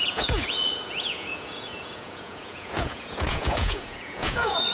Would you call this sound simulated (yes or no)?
yes